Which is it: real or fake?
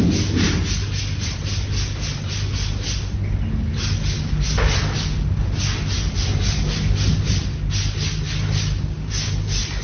real